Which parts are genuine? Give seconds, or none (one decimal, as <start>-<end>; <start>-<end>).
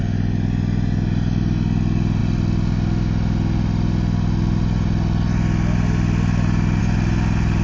0.0-7.6